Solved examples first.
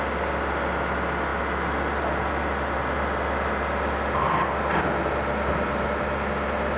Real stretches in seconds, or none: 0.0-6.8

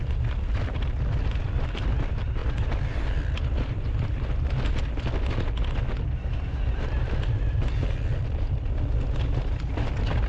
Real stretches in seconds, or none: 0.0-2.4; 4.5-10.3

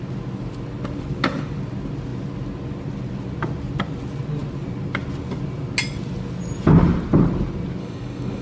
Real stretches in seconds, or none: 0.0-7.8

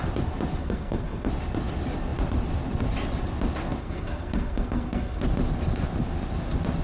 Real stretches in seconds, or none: 0.0-0.6; 1.3-3.8; 5.2-6.8